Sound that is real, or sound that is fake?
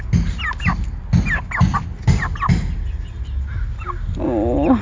real